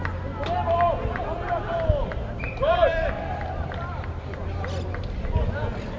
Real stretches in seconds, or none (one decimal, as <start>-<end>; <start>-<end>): 0.0-6.0